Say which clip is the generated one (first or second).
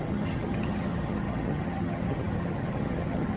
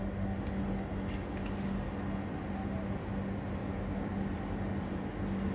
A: first